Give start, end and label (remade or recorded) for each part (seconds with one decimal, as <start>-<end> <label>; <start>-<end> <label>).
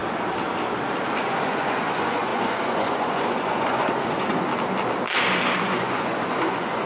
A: 0.0-1.2 recorded; 1.2-4.5 remade; 4.5-5.6 recorded; 5.6-6.9 remade